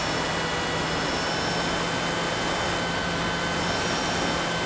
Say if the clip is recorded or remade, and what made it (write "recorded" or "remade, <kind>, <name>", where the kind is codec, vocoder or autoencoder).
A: recorded